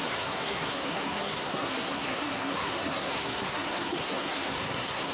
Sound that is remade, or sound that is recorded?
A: remade